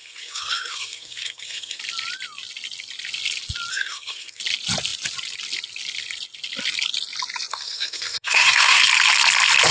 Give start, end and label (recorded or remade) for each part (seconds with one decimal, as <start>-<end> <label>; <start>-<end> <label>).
0.0-1.8 remade; 1.8-3.7 recorded; 3.7-4.4 remade; 4.4-7.5 recorded; 7.5-8.8 remade; 8.8-9.7 recorded